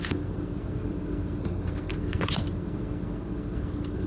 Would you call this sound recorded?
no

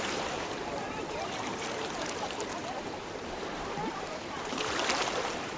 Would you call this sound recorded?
no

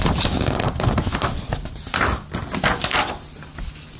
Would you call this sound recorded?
yes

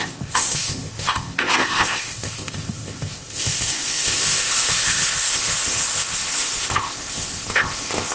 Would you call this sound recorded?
no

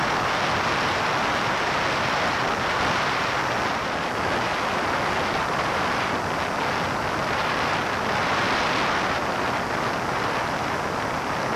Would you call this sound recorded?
yes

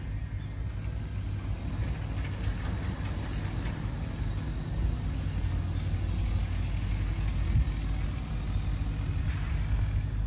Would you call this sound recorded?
yes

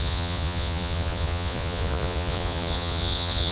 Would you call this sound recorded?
no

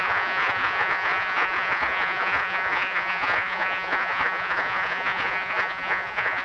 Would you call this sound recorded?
no